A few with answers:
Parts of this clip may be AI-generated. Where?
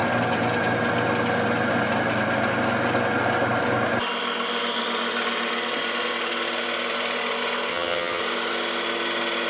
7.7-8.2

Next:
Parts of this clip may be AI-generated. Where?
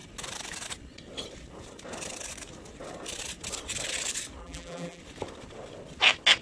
4.4-5.0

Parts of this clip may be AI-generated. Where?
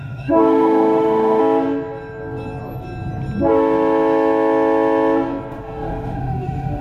0.0-1.4; 5.5-6.8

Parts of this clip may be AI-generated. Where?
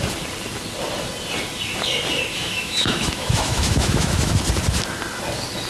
2.3-4.3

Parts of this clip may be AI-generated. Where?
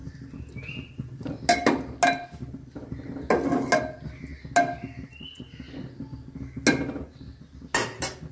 none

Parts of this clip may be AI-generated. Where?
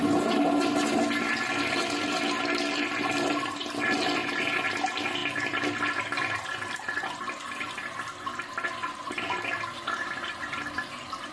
none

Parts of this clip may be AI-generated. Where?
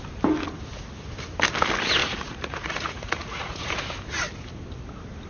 2.0-3.7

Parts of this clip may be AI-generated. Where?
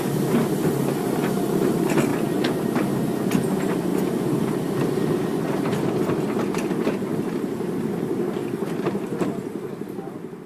2.1-2.6; 3.9-5.9; 7.1-8.9